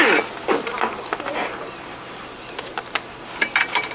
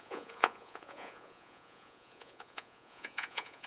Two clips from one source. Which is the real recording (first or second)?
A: first